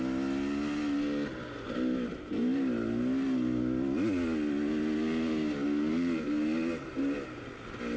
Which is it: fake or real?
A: real